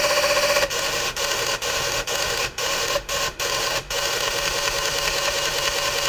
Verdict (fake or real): fake